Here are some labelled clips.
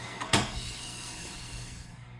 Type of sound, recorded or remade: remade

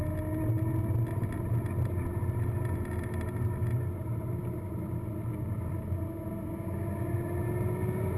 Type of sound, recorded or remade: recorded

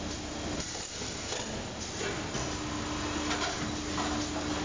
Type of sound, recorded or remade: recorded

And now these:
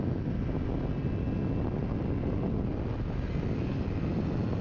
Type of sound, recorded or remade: recorded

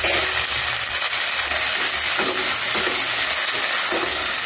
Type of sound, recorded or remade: recorded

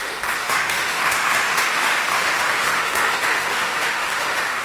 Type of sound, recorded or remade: remade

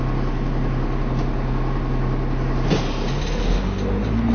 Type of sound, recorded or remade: recorded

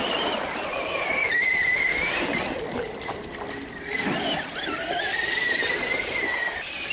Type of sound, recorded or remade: remade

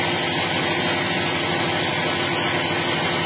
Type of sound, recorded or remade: recorded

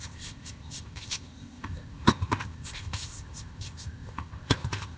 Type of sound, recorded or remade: remade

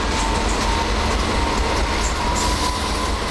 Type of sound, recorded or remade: recorded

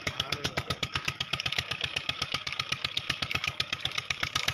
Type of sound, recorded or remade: remade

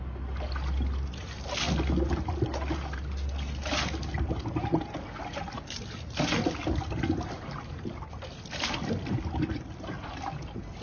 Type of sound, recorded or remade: recorded